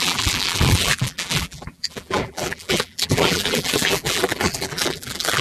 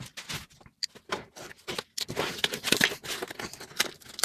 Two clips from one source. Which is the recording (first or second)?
second